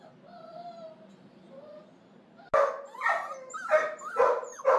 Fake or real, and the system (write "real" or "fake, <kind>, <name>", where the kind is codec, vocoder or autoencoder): real